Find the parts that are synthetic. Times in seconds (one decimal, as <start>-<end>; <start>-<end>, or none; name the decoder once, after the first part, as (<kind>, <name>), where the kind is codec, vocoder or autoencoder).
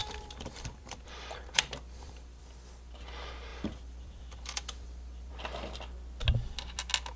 0.0-2.4 (vocoder, BigVGAN v2); 3.5-5.3